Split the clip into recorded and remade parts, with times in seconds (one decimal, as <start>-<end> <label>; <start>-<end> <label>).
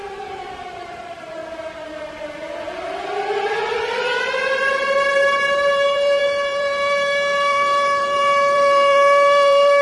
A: 0.0-1.4 remade; 1.4-5.1 recorded; 5.1-9.8 remade